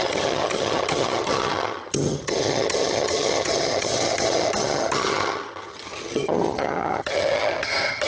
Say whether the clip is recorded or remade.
remade